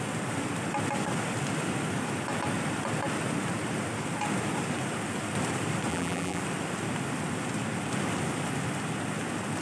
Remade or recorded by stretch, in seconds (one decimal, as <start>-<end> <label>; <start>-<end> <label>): 0.0-5.9 recorded; 5.9-6.4 remade; 6.4-9.6 recorded